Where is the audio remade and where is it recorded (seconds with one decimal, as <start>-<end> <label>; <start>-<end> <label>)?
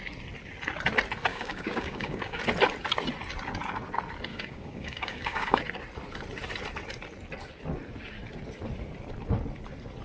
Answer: 0.0-1.3 recorded; 1.3-2.4 remade; 2.4-4.3 recorded; 4.3-5.6 remade; 5.6-10.0 recorded